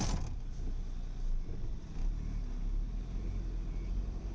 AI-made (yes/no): no